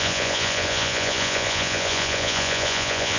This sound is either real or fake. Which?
fake